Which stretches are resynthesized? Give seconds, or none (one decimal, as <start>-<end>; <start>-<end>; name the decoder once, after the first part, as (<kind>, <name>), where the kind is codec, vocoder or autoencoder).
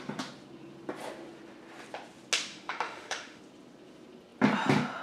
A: 2.5-3.4 (autoencoder, DAC-VAE)